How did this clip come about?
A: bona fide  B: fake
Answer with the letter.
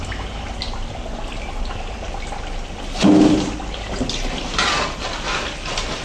A